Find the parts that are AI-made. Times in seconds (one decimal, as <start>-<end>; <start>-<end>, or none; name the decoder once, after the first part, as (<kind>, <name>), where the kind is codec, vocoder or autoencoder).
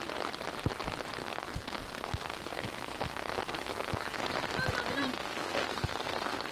1.2-4.2 (codec, SNAC); 5.1-6.5